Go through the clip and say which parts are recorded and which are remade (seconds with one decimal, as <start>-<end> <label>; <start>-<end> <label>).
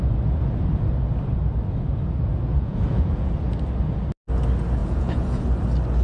0.0-2.5 recorded; 2.5-3.3 remade; 3.3-4.8 recorded; 4.8-5.4 remade; 5.4-6.0 recorded